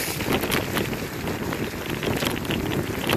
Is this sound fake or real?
real